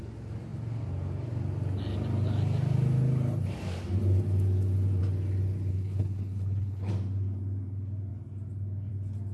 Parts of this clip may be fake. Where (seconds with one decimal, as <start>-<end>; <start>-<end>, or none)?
5.7-6.9